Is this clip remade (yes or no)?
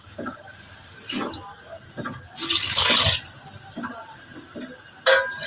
no